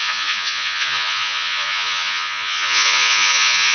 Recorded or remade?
remade